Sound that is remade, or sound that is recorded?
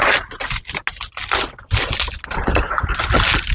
recorded